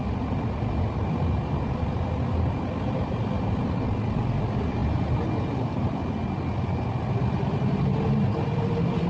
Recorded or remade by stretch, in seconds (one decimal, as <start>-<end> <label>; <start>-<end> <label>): 0.0-9.1 recorded